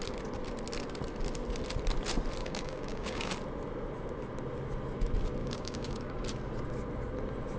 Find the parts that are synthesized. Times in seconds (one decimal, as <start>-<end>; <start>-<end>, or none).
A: 2.4-3.3; 5.4-6.1